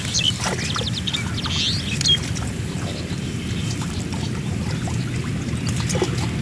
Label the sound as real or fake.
real